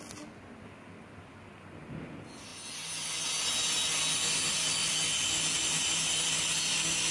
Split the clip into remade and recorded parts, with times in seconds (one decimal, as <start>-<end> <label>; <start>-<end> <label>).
0.0-7.1 recorded